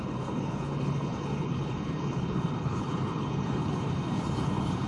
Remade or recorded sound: remade